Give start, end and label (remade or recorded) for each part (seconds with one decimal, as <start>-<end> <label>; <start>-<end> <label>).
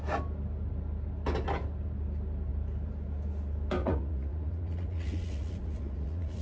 0.0-3.8 recorded; 3.8-6.4 remade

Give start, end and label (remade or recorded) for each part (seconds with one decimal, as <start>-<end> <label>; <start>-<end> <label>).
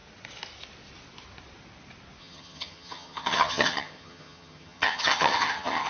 0.0-2.2 recorded; 2.2-5.9 remade